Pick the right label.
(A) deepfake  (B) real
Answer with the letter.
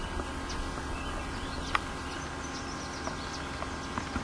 B